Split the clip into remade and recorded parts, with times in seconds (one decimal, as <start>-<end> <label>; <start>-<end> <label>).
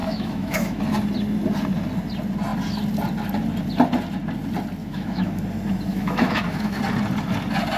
0.0-0.8 remade; 0.8-4.8 recorded; 4.8-5.4 remade; 5.4-5.9 recorded; 5.9-6.8 remade; 6.8-7.8 recorded